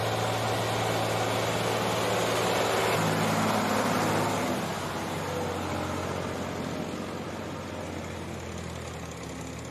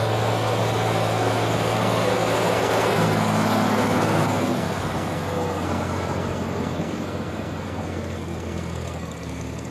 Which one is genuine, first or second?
first